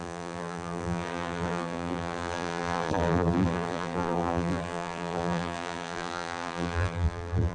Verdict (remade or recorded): remade